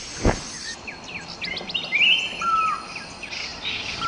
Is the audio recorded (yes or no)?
yes